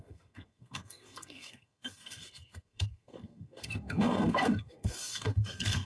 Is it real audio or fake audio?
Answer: fake